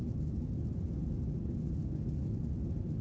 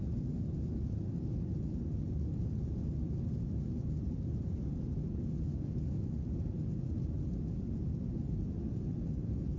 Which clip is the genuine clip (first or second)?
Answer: first